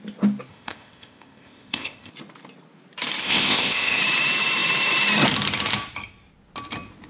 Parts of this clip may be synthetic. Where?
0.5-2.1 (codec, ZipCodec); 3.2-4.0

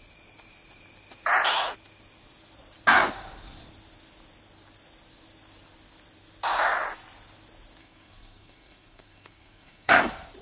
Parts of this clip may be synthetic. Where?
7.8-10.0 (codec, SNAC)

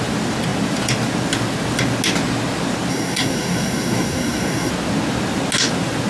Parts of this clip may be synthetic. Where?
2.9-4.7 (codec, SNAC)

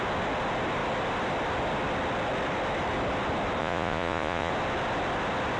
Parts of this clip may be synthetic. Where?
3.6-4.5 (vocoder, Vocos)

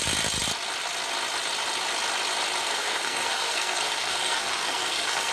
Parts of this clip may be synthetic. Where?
2.6-5.3 (codec, SNAC)

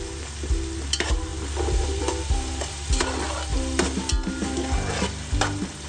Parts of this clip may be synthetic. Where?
none

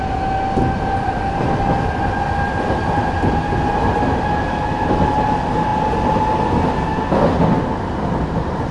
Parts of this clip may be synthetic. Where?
none

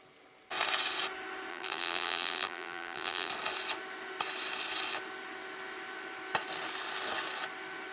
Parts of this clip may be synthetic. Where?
1.5-3.3 (vocoder, BigVGAN v2)